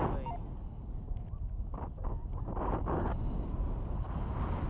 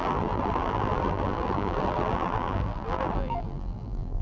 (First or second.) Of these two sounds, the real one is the first